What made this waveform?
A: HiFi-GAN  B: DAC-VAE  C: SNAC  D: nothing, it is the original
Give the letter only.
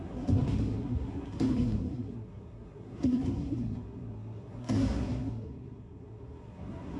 C